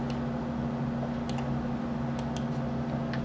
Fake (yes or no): no